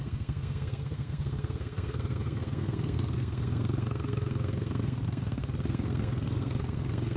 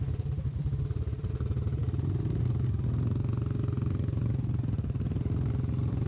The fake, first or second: first